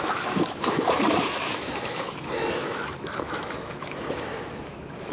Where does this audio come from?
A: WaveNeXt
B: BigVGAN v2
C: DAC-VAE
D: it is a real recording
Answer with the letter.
C